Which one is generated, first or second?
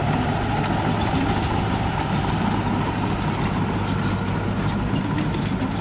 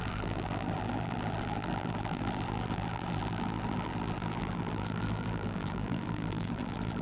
second